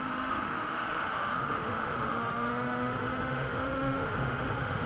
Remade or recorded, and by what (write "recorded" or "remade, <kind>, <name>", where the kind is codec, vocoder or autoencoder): remade, autoencoder, DAC-VAE